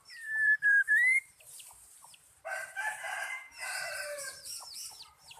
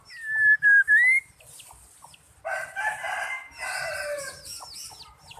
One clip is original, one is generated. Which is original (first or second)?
second